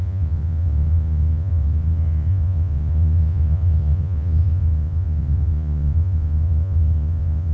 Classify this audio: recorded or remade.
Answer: remade